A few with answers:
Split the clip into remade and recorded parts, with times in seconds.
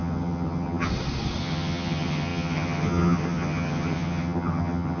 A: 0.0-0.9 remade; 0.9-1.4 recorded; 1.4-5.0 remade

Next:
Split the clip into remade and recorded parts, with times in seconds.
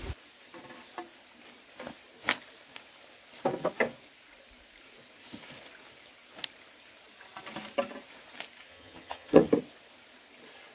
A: 0.0-8.7 recorded; 8.7-9.5 remade; 9.5-10.7 recorded